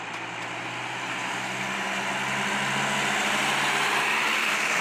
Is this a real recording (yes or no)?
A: yes